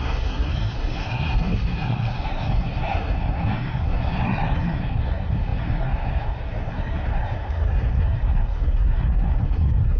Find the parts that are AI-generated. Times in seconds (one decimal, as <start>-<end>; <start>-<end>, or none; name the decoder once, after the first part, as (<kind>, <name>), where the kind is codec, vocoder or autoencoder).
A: 0.0-10.0 (codec, SNAC)